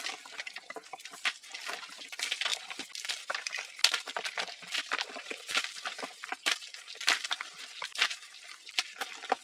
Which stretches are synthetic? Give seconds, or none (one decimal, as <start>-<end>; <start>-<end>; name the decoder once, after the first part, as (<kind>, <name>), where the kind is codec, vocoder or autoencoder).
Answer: none